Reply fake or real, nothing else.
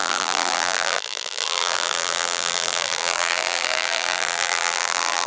fake